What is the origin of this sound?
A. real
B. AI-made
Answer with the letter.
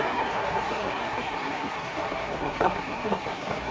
B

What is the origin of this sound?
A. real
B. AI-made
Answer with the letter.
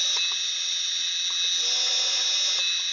A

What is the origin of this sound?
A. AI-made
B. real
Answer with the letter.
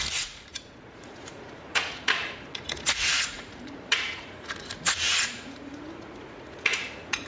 A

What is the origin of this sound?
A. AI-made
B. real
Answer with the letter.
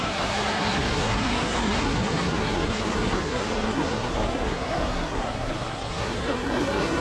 A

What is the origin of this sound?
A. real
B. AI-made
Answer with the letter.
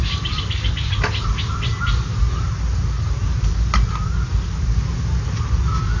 A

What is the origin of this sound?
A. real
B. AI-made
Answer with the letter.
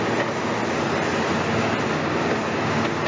A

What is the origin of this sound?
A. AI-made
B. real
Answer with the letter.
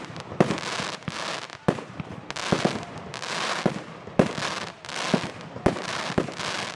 B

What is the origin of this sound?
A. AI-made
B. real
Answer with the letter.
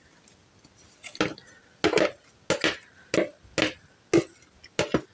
B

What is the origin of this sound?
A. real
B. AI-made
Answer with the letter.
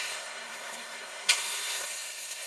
B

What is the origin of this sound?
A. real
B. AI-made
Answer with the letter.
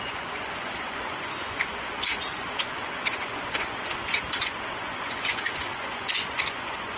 B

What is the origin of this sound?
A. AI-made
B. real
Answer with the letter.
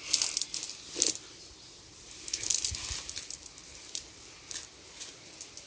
B